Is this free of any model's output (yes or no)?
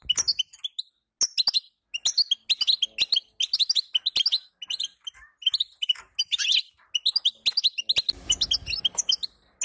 yes